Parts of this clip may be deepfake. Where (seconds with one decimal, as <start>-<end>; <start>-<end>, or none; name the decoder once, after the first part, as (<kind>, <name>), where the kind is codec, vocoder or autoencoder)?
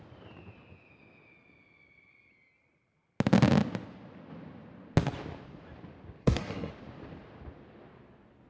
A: 6.2-6.7 (codec, SNAC)